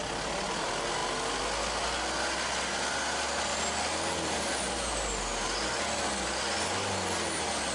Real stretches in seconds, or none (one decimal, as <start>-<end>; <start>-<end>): 0.0-7.7